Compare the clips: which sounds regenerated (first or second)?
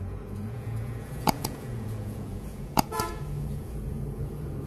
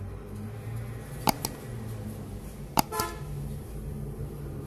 first